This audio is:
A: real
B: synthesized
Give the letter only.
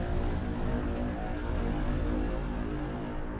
A